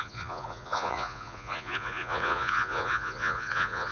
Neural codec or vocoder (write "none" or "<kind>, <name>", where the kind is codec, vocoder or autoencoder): vocoder, Vocos